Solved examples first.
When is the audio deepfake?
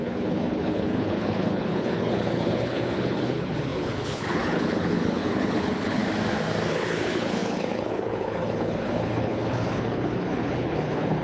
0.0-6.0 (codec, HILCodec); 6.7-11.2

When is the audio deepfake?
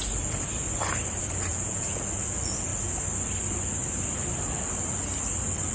1.5-2.0 (vocoder, Vocos)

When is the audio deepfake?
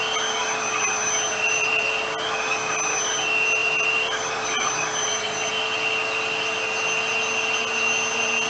0.4-1.8 (vocoder, BigVGAN v2); 3.6-5.5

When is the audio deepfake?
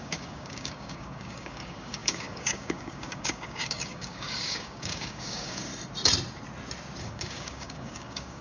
0.0-5.7 (codec, DAC); 7.0-8.4